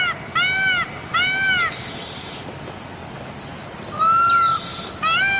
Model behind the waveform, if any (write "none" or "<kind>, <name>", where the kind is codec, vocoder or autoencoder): none